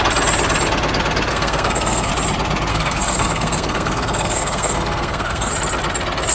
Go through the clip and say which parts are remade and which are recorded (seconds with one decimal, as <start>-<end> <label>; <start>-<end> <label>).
0.0-1.3 recorded; 1.3-2.1 remade; 2.1-2.7 recorded; 2.7-5.5 remade; 5.5-6.3 recorded